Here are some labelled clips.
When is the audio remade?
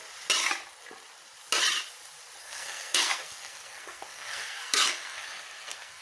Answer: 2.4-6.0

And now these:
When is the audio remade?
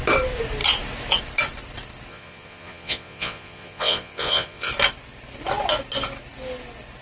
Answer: 2.1-4.7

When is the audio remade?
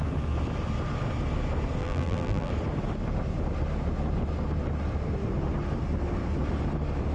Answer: 1.8-2.5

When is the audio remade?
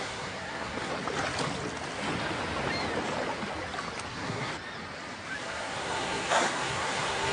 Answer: 0.0-0.9; 4.1-4.5; 5.4-7.3